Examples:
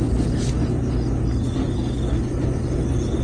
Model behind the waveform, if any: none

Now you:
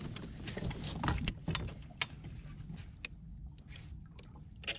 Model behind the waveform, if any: none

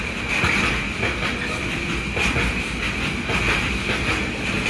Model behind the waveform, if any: none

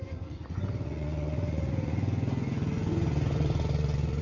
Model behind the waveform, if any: vocoder, Vocos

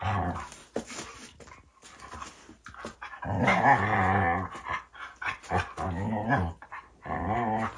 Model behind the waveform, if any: none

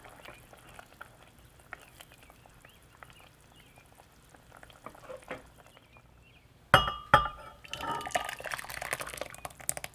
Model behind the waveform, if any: none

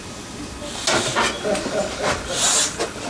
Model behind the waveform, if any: none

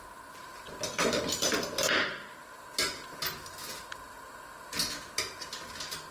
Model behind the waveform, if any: none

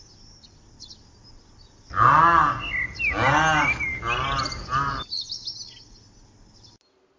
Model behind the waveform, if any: none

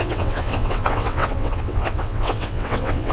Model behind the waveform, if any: vocoder, WaveNeXt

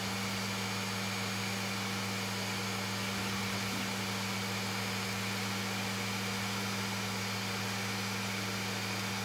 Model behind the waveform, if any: none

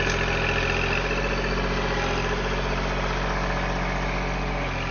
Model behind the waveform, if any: none